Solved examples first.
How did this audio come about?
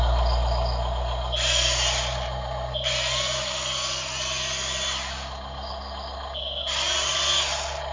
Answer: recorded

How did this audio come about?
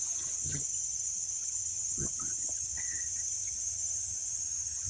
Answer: remade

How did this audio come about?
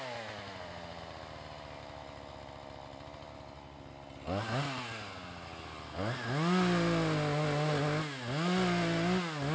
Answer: recorded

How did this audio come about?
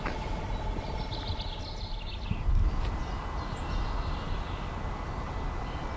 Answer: recorded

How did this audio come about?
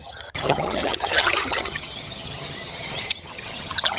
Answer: remade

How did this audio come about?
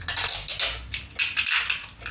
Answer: recorded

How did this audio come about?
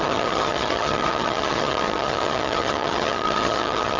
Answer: remade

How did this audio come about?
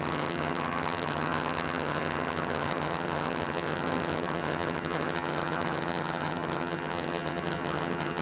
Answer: remade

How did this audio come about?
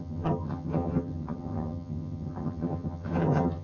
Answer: remade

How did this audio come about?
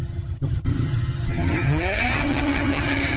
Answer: remade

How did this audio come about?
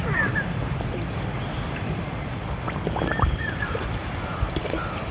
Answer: recorded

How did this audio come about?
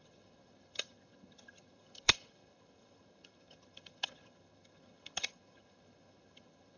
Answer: remade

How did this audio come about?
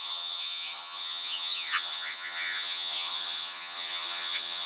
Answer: remade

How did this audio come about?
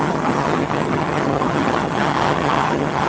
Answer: remade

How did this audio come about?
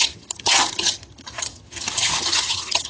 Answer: remade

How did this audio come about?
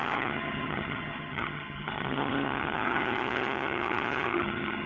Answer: remade